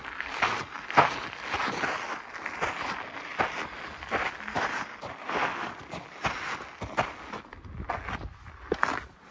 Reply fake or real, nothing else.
real